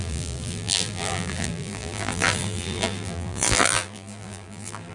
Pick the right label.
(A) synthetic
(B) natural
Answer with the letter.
A